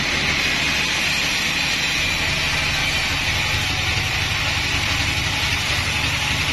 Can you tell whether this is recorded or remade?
recorded